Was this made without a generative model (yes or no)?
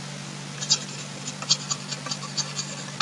yes